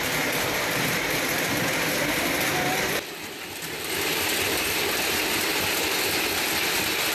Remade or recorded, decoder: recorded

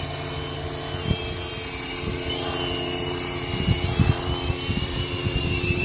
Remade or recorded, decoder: remade, vocoder, BigVGAN v2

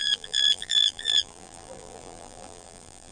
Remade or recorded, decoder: remade, vocoder, BigVGAN v2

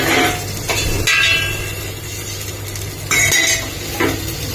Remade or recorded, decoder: recorded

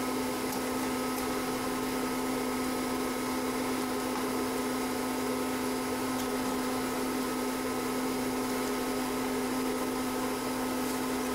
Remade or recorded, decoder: recorded